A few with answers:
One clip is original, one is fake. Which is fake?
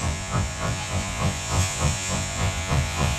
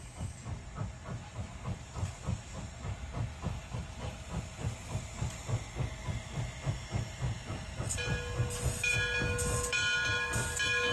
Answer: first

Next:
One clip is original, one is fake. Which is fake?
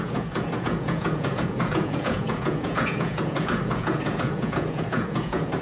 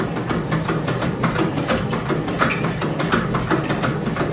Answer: first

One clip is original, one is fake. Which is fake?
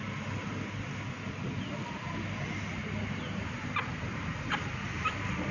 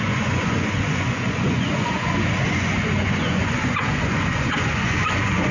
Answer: second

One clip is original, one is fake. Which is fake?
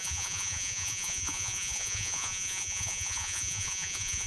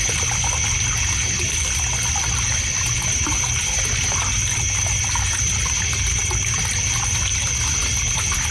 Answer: first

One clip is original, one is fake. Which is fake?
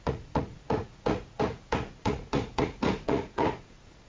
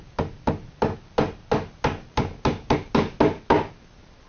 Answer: first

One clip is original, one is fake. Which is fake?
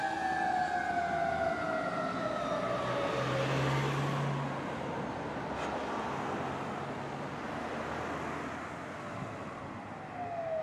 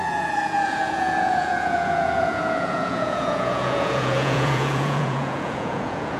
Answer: second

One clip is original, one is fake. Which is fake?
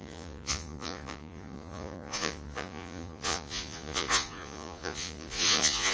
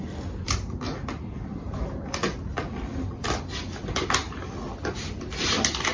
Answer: first